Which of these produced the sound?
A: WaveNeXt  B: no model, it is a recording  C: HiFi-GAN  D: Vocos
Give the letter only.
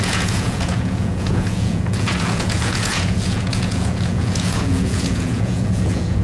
D